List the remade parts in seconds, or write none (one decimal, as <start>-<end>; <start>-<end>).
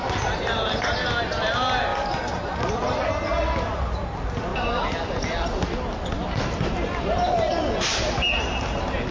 none